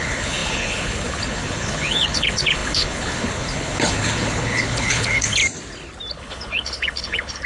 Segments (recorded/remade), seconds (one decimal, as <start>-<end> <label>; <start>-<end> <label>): 0.0-5.4 remade; 5.4-6.1 recorded; 6.1-7.5 remade